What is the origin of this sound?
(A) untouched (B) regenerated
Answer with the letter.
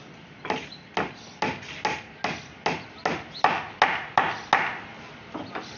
A